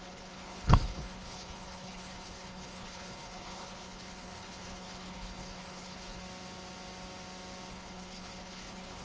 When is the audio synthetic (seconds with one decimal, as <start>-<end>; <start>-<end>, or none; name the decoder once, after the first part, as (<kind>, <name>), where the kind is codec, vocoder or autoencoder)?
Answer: 0.0-6.2 (codec, HILCodec); 7.7-9.0